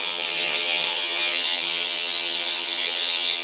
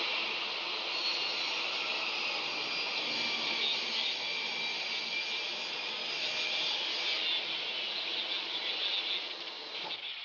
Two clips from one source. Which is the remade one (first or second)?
first